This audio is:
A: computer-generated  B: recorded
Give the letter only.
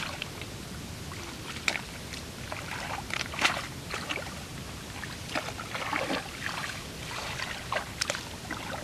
B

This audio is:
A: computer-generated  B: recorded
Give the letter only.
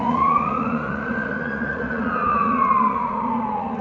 A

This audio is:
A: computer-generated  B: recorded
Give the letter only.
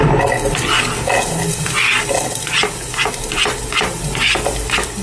B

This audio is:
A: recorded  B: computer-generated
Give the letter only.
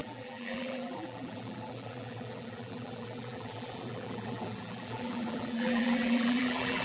B